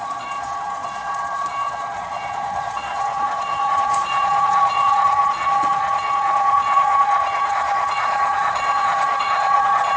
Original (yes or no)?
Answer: no